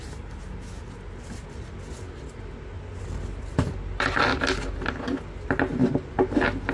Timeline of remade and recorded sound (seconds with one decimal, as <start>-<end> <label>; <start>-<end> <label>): 0.0-6.7 recorded

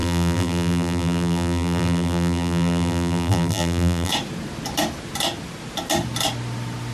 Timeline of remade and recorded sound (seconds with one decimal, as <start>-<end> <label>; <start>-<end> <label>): 0.0-4.1 remade; 4.1-6.9 recorded

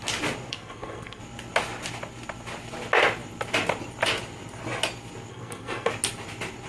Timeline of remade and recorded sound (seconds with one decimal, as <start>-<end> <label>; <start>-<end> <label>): 0.0-0.5 recorded; 0.5-1.2 remade; 1.2-5.3 recorded; 5.3-5.9 remade; 5.9-6.7 recorded